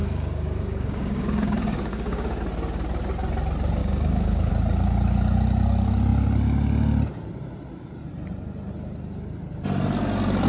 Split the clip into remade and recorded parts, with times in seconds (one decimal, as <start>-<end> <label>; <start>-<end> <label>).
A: 0.0-2.4 remade; 2.4-3.8 recorded; 3.8-4.5 remade; 4.5-10.5 recorded